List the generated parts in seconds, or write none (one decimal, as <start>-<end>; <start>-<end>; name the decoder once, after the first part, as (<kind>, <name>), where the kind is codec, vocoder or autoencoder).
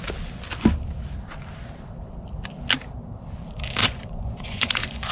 3.8-5.1 (vocoder, Vocos)